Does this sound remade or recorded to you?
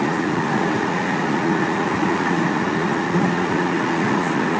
remade